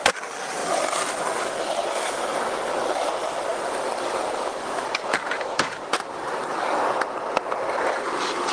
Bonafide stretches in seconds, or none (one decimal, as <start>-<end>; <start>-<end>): 0.0-8.5